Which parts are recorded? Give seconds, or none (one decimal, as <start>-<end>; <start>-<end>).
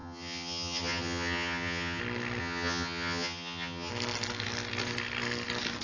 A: 2.0-2.4; 3.9-5.8